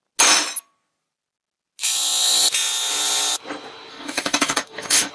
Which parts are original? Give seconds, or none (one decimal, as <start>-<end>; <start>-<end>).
0.0-3.9